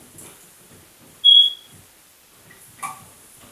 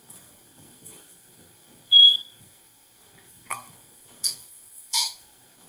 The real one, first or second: first